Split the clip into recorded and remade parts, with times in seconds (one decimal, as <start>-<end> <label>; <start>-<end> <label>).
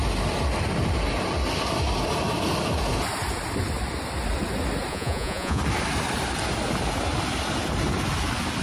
0.0-4.9 recorded; 4.9-5.6 remade; 5.6-8.6 recorded